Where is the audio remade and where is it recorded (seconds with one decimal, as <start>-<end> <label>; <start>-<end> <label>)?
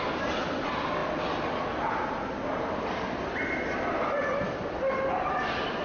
0.0-5.8 recorded